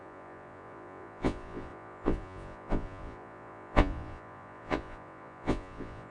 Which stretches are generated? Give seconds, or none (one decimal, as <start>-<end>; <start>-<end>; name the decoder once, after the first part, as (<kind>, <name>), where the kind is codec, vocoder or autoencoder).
0.0-6.1 (vocoder, Vocos)